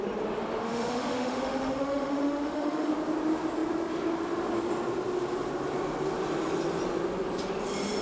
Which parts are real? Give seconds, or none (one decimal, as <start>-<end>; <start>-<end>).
0.0-0.6; 2.9-8.0